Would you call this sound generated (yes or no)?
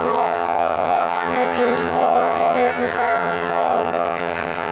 yes